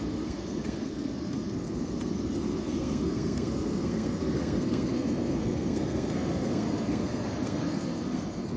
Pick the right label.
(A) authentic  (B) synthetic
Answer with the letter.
B